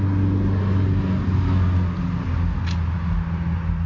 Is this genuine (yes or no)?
yes